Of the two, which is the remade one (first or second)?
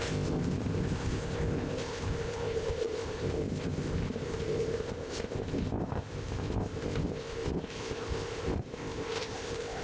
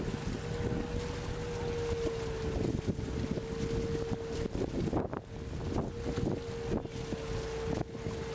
first